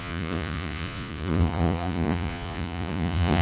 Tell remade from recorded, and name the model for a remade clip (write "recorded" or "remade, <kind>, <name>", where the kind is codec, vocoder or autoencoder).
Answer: remade, vocoder, Vocos